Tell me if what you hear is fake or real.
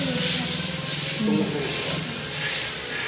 real